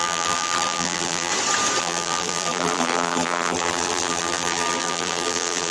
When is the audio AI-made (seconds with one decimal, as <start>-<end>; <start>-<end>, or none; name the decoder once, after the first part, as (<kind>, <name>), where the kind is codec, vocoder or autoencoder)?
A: 0.0-1.3 (vocoder, BigVGAN v2); 1.8-5.7